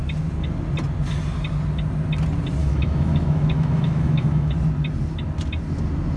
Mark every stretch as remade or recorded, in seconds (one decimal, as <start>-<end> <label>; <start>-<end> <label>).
0.0-2.6 recorded; 2.6-4.5 remade; 4.5-6.2 recorded